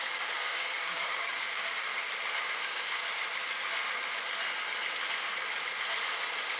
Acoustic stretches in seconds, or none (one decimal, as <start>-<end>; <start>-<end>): 1.9-2.4; 3.0-6.6